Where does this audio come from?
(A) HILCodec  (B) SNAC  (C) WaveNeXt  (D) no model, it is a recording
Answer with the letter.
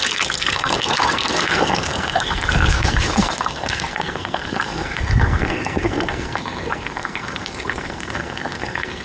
B